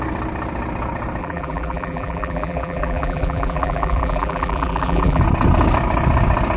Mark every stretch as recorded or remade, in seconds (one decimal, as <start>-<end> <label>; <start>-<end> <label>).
0.0-1.2 recorded; 1.2-5.2 remade; 5.2-6.6 recorded

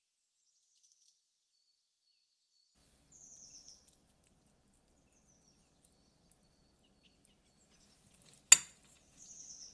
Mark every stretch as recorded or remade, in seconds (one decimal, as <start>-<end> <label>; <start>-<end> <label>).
0.0-2.8 recorded; 2.8-4.2 remade; 4.2-9.7 recorded

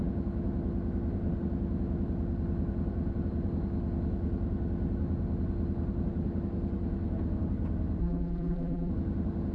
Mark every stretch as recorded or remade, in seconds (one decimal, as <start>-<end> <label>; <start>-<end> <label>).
0.0-8.0 recorded; 8.0-8.9 remade; 8.9-9.5 recorded